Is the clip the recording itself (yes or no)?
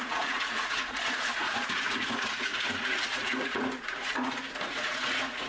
no